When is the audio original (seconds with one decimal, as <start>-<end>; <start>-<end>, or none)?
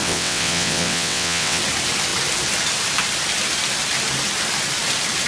1.6-5.3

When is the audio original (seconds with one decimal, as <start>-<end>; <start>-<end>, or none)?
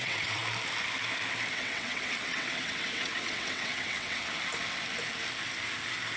0.4-1.5; 4.2-6.2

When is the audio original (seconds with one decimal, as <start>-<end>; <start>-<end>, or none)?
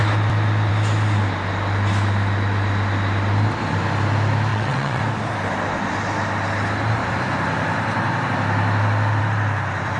0.0-4.5; 5.0-10.0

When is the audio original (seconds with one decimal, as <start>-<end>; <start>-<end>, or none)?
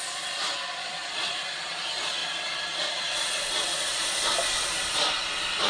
0.0-5.7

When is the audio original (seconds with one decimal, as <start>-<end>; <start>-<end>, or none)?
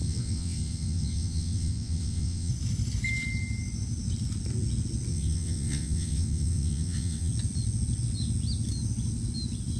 2.5-5.1; 7.3-9.8